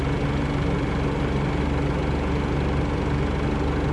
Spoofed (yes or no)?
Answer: no